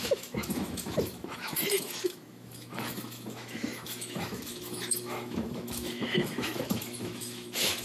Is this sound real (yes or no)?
no